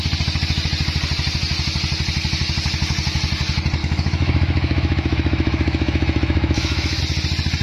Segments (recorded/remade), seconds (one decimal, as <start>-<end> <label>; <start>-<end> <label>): 0.0-3.8 recorded; 3.8-7.0 remade; 7.0-7.6 recorded